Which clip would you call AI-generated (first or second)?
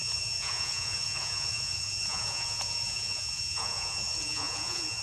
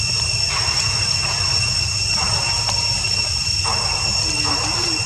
first